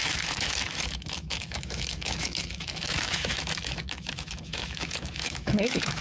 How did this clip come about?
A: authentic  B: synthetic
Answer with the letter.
B